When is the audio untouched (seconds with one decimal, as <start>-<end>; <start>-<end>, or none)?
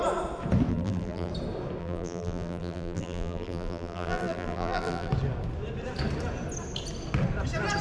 0.0-0.7; 1.3-1.8; 5.1-7.8